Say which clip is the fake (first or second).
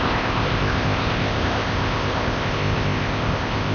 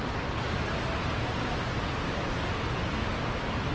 first